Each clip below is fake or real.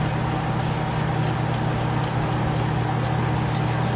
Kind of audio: real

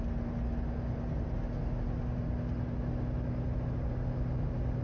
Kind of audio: real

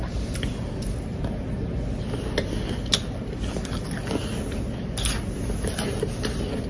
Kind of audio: real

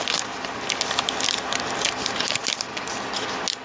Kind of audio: real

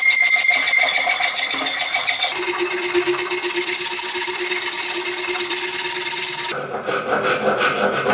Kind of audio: real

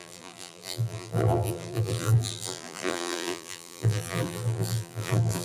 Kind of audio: fake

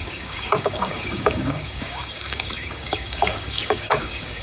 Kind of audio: fake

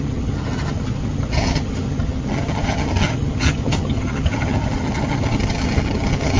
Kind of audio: fake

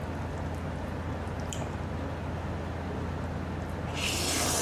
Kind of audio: real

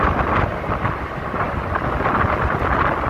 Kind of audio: real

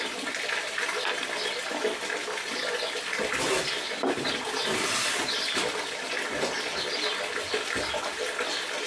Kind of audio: real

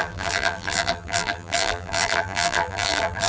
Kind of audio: fake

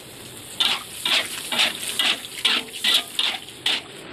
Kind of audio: real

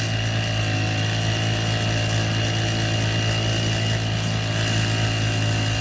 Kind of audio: real